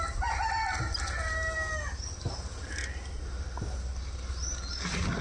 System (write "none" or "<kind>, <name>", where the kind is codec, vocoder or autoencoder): none